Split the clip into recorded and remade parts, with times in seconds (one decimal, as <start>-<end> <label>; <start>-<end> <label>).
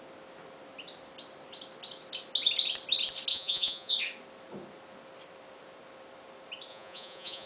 0.0-3.3 recorded; 3.3-3.9 remade; 3.9-6.7 recorded; 6.7-7.5 remade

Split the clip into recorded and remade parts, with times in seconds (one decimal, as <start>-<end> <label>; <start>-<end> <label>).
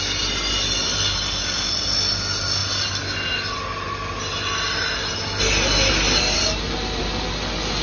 0.0-7.8 recorded